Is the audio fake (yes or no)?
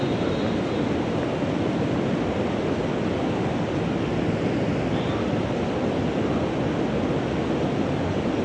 no